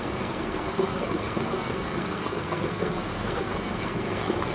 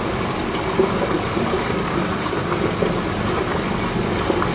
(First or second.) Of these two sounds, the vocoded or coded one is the first